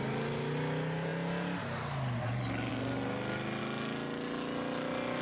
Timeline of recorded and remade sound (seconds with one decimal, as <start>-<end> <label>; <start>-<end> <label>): 0.0-5.2 recorded